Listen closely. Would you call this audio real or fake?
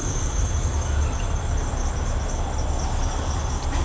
real